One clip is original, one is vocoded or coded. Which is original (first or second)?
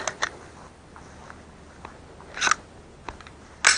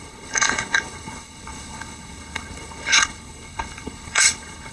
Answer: first